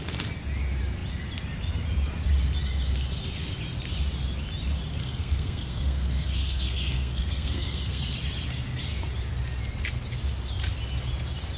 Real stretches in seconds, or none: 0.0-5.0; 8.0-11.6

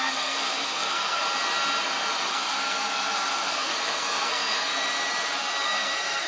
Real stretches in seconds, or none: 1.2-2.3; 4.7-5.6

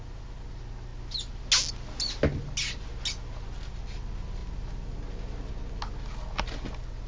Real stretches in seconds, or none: 0.0-7.1